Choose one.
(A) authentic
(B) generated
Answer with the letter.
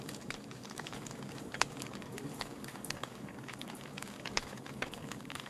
B